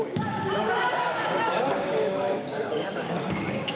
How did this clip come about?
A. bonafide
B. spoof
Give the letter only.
B